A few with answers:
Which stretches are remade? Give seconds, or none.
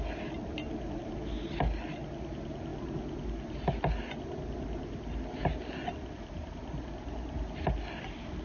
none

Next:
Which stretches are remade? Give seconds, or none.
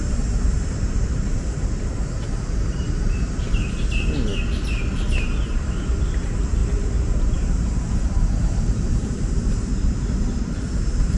0.0-3.7 (vocoder, BigVGAN v2); 6.6-11.2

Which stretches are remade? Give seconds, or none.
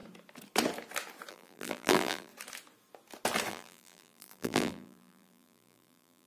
1.3-2.3 (vocoder, BigVGAN v2); 3.5-6.3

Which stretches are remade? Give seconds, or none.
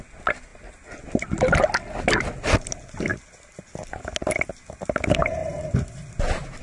5.4-6.1 (vocoder, BigVGAN v2)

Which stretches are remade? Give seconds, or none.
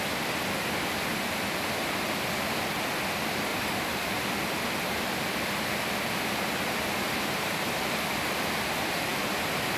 3.5-4.2 (vocoder, BigVGAN v2)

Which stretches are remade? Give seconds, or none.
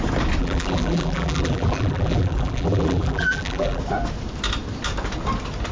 0.4-3.8 (vocoder, BigVGAN v2)